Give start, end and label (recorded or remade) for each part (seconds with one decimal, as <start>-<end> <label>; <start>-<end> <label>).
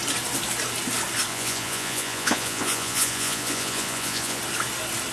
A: 0.0-1.3 recorded; 1.3-4.4 remade; 4.4-5.1 recorded